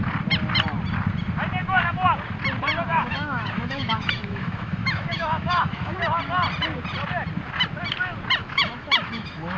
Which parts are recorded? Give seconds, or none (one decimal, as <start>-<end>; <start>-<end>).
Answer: 0.0-2.9; 6.0-8.4